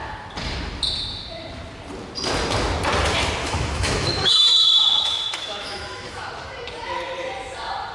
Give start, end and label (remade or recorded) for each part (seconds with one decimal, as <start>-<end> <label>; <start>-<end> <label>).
0.0-3.4 recorded; 3.4-6.3 remade; 6.3-7.9 recorded

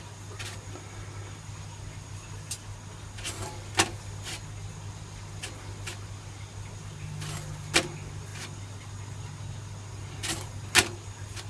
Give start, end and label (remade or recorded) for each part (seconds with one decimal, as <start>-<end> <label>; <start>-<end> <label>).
0.0-11.5 recorded